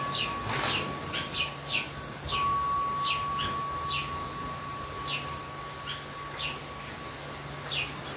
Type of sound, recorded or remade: recorded